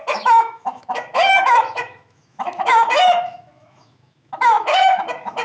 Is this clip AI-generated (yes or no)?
yes